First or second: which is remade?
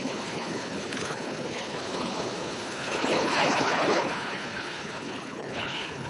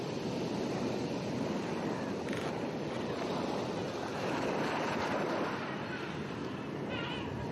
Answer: first